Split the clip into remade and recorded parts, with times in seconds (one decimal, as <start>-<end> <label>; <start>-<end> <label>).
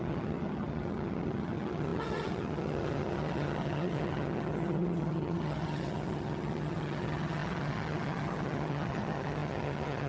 0.0-10.1 remade